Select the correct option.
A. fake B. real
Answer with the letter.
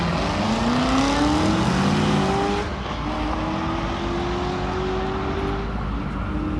B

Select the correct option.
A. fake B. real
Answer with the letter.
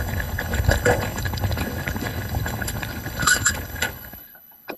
A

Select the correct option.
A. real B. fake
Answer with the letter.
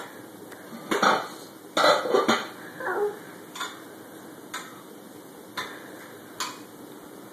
A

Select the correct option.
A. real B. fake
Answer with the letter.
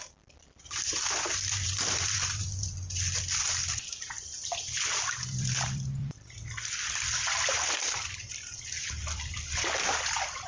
B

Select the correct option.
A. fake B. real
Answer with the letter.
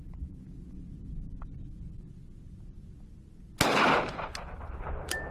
B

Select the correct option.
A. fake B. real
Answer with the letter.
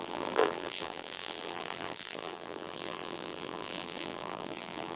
A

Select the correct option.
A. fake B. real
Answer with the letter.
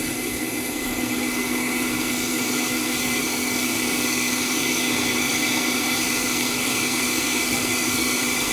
A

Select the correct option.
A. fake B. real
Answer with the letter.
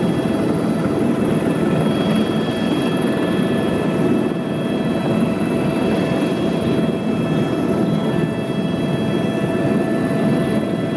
B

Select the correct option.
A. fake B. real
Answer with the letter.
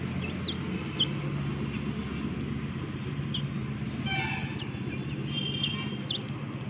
B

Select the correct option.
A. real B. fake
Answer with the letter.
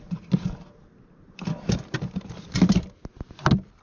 A